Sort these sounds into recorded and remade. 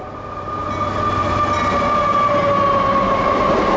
recorded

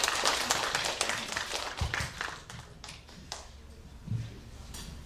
recorded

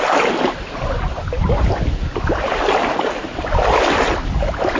recorded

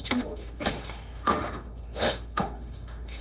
remade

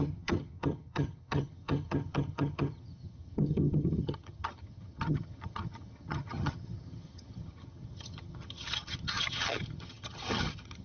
remade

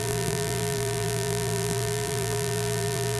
remade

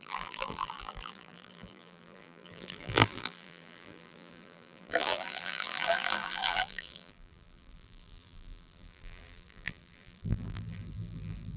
remade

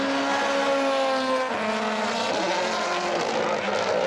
recorded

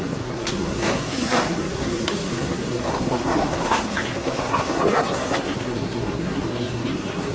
remade